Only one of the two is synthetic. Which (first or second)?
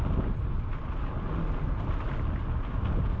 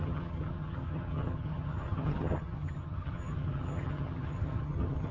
second